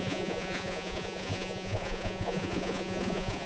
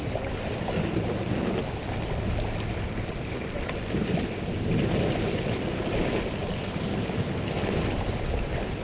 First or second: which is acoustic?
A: second